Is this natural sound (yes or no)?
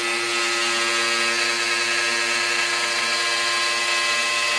yes